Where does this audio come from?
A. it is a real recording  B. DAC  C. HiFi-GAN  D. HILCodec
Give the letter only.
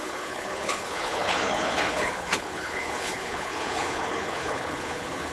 D